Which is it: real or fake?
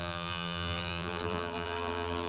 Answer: fake